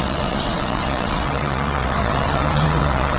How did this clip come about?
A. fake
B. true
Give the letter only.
A